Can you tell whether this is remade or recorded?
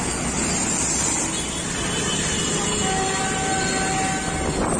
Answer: recorded